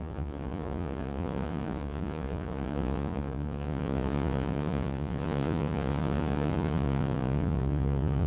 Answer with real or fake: fake